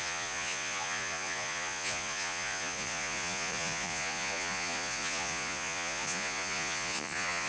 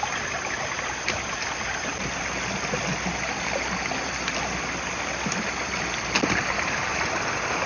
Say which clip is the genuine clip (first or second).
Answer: second